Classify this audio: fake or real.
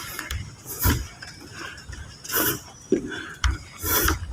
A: real